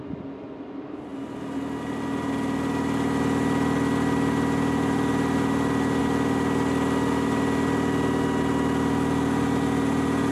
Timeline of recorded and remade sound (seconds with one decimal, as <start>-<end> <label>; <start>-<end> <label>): 0.0-10.3 recorded

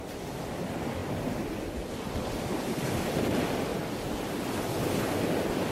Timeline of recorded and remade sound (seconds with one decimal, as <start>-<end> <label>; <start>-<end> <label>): 0.0-5.7 recorded

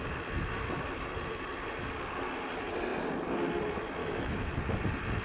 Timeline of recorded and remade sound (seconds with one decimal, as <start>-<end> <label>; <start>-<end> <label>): 0.0-4.0 recorded; 4.0-4.5 remade; 4.5-5.2 recorded

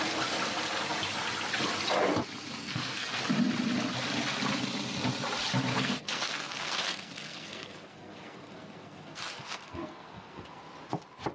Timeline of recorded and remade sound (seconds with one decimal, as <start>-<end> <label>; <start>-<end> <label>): 0.0-2.6 recorded; 2.6-3.2 remade; 3.2-5.7 recorded; 5.7-10.6 remade; 10.6-11.3 recorded

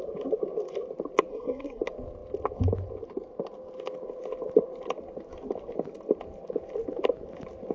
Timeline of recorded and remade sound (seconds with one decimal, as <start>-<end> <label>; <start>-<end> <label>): 0.0-1.3 recorded; 1.3-1.8 remade; 1.8-7.7 recorded

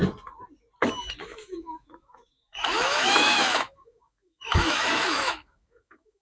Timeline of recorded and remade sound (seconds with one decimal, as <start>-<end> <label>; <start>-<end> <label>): 0.0-1.2 recorded; 1.2-6.2 remade

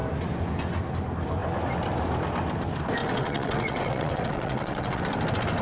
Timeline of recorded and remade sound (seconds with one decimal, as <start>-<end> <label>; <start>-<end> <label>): 0.0-3.0 recorded; 3.0-5.0 remade; 5.0-5.6 recorded

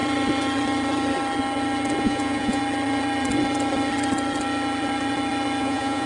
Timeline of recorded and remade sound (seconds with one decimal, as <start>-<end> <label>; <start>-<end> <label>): 0.0-2.0 recorded; 2.0-2.6 remade; 2.6-5.6 recorded; 5.6-6.1 remade